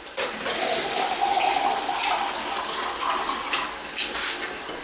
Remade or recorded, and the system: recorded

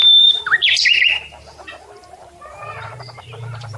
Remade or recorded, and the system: remade, vocoder, BigVGAN v2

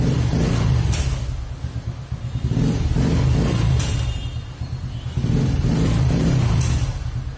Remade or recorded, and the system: recorded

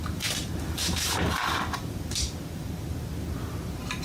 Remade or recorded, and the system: recorded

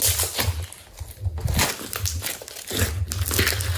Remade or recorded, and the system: recorded